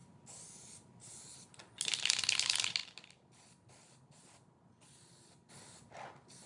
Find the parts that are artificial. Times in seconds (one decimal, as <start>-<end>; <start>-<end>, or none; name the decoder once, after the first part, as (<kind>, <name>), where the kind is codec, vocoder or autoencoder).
none